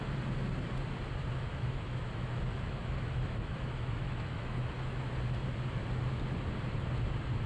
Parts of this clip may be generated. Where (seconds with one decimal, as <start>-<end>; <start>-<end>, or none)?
1.5-5.1